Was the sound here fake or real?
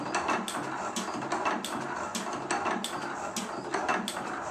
real